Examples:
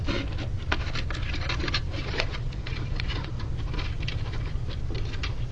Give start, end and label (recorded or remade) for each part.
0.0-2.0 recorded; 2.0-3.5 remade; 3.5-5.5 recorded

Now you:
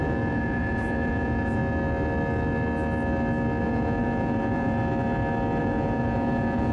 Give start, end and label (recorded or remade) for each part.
0.0-1.6 remade; 1.6-3.6 recorded; 3.6-4.8 remade; 4.8-5.6 recorded; 5.6-6.7 remade